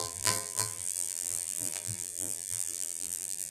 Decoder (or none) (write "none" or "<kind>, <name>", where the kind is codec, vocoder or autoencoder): vocoder, BigVGAN v2